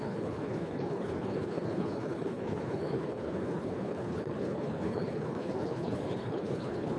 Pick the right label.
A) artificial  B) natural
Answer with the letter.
A